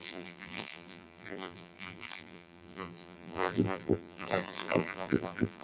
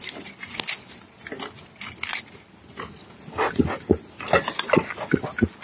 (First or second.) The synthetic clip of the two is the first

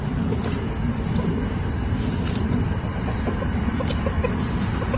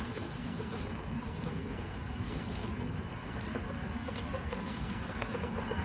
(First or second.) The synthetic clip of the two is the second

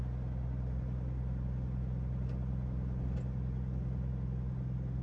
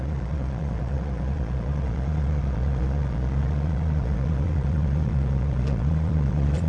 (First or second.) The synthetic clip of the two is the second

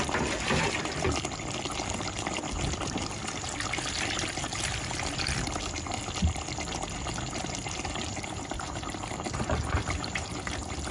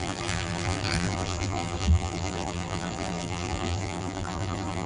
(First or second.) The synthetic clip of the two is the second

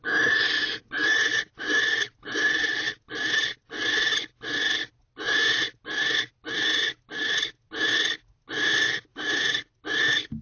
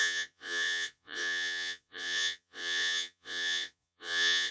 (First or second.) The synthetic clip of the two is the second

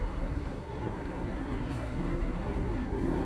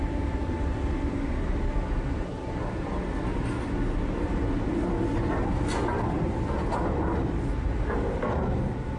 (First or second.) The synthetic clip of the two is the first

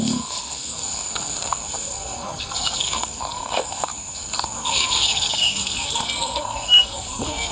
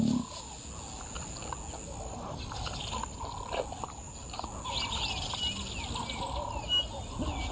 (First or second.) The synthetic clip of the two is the first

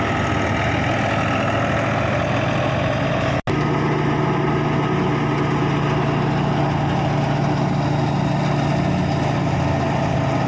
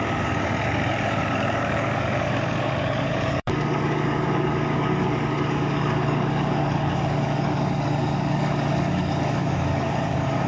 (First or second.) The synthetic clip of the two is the second